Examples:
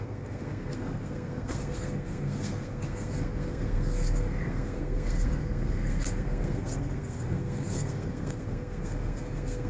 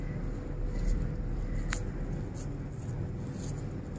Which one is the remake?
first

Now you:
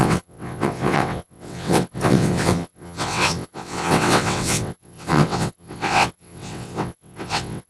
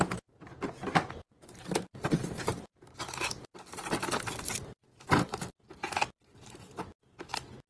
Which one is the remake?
first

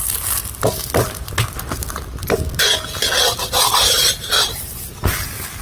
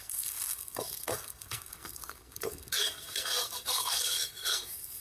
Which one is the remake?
second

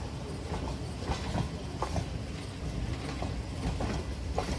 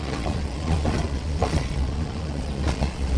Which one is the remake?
second